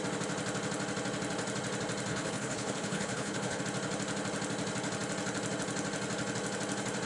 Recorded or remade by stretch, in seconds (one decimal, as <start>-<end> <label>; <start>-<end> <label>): 0.0-2.1 recorded; 2.1-3.6 remade; 3.6-7.1 recorded